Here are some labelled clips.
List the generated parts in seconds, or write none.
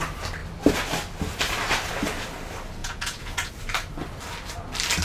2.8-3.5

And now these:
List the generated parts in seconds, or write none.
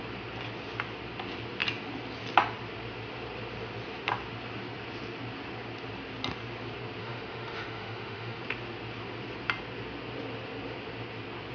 7.0-8.4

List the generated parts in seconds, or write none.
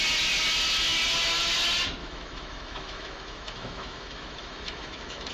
2.0-5.3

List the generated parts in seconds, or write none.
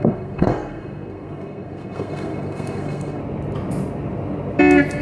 0.0-3.2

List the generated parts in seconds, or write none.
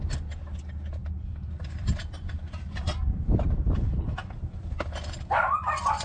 1.0-2.8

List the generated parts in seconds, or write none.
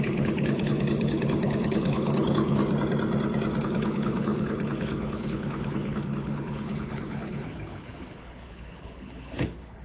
0.0-2.6; 3.6-9.8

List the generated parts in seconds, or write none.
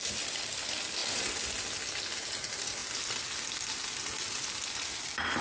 none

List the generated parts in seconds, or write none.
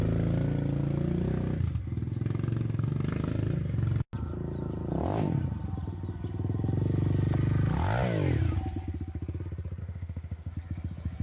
9.8-10.5